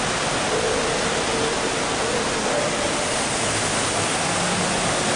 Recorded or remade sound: recorded